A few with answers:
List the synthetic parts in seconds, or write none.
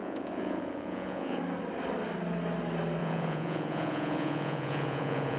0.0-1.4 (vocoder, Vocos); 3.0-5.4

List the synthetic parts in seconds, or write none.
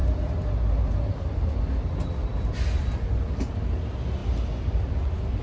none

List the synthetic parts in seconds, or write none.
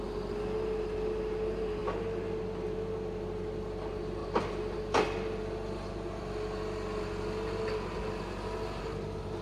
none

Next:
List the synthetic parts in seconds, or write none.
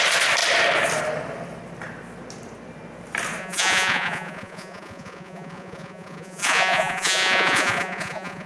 3.4-8.5 (vocoder, Vocos)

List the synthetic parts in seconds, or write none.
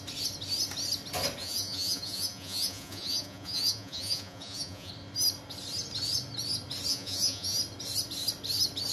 1.4-4.9 (vocoder, Vocos); 6.9-7.6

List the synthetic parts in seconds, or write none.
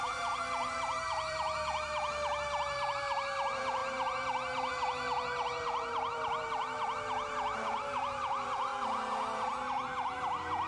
0.0-8.7 (vocoder, BigVGAN v2); 10.1-10.7